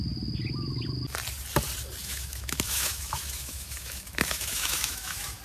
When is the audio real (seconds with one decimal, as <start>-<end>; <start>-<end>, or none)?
0.0-2.0